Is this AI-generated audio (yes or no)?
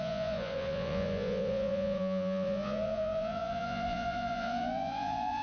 yes